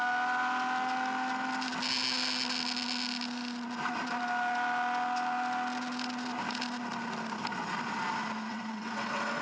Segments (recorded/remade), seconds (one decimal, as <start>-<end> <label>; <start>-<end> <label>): 0.0-8.5 recorded; 8.5-9.4 remade